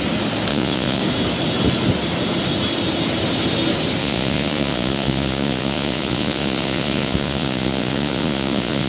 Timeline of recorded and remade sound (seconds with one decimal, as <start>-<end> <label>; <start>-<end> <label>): 0.0-0.5 recorded; 0.5-1.0 remade; 1.0-4.0 recorded; 4.0-8.9 remade